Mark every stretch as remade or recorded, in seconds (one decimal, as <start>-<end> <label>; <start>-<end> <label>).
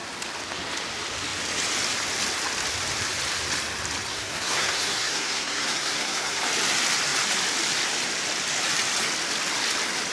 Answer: 0.0-4.1 recorded; 4.1-6.4 remade; 6.4-10.1 recorded